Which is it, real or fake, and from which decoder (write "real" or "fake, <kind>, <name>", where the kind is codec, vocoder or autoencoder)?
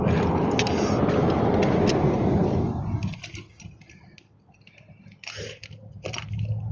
real